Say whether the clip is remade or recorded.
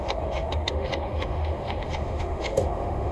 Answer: remade